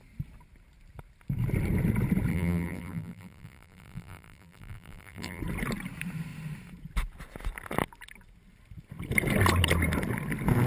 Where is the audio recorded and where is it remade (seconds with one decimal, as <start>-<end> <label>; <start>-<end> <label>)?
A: 0.0-2.3 recorded; 2.3-5.4 remade; 5.4-10.7 recorded

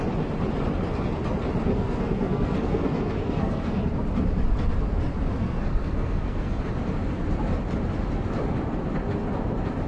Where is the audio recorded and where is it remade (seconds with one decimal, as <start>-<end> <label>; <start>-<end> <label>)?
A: 0.0-1.7 recorded; 1.7-3.8 remade; 3.8-5.4 recorded; 5.4-6.6 remade; 6.6-9.9 recorded

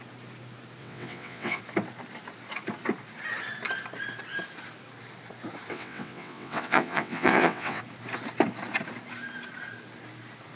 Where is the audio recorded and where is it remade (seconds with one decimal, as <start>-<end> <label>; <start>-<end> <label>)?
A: 0.0-0.8 recorded; 0.8-1.6 remade; 1.6-5.7 recorded; 5.7-7.8 remade; 7.8-10.6 recorded

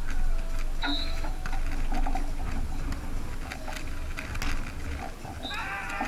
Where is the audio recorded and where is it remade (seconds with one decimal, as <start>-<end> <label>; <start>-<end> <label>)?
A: 0.0-0.8 recorded; 0.8-1.3 remade; 1.3-6.1 recorded

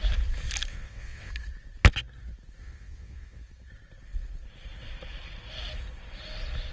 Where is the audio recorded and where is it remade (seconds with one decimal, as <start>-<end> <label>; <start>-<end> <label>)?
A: 0.0-0.7 recorded; 0.7-1.3 remade; 1.3-2.6 recorded; 2.6-3.4 remade; 3.4-6.7 recorded

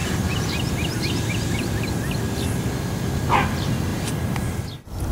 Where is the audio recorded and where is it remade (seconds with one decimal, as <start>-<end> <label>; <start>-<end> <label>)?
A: 0.0-3.9 recorded; 3.9-4.4 remade; 4.4-5.1 recorded

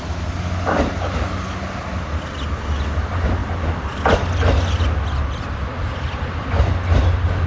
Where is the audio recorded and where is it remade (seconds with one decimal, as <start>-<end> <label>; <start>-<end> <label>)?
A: 0.0-7.5 recorded

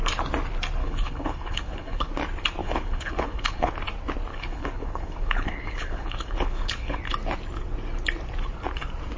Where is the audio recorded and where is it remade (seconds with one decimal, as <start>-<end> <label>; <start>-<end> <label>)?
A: 0.0-0.8 recorded; 0.8-2.1 remade; 2.1-2.6 recorded; 2.6-3.7 remade; 3.7-4.3 recorded; 4.3-7.0 remade; 7.0-9.2 recorded